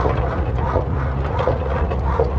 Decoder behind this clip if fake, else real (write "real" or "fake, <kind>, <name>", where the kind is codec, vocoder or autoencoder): fake, vocoder, Vocos